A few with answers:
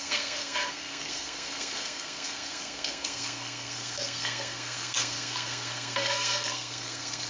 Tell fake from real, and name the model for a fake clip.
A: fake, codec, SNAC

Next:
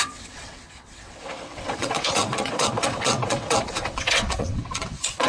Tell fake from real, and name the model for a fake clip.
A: fake, vocoder, WaveNeXt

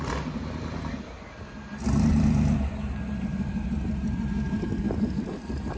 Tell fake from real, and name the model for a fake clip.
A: real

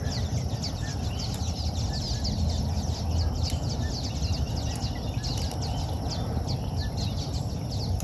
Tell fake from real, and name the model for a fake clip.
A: real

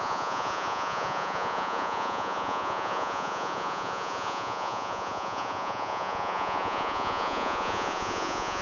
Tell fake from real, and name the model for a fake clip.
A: fake, vocoder, Vocos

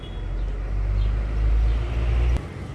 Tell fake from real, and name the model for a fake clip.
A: real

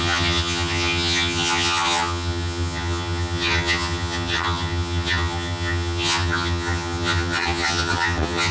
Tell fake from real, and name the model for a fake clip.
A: fake, vocoder, HiFi-GAN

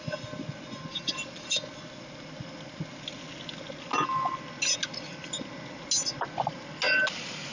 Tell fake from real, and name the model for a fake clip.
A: real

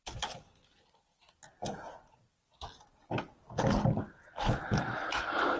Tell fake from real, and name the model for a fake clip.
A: real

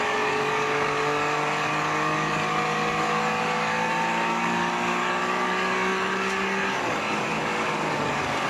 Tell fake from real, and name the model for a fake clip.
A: fake, codec, DAC